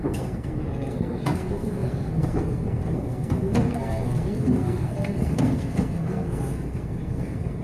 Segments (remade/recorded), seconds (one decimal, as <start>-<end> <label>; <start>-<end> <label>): 0.0-7.6 remade